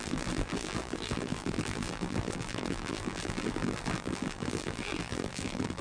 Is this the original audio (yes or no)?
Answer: no